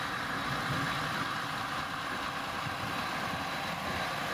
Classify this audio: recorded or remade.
recorded